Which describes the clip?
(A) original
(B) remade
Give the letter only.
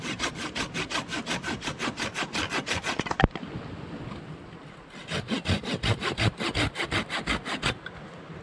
A